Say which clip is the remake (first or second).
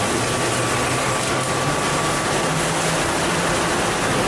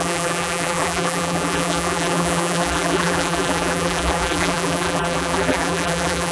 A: second